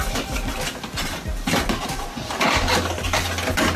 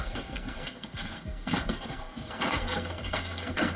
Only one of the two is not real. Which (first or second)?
second